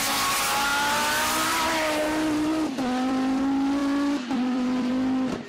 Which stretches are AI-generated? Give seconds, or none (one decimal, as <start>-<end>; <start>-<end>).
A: 0.7-3.4; 3.8-4.9